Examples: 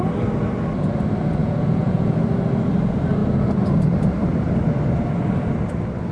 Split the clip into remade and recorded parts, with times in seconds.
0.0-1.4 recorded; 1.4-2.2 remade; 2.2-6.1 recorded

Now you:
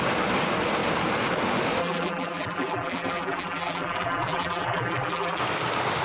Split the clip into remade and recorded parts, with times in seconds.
0.0-1.8 recorded; 1.8-5.4 remade; 5.4-6.0 recorded